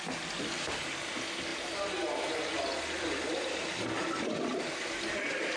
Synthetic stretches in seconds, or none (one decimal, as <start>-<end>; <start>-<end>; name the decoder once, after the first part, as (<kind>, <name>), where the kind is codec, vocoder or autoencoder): none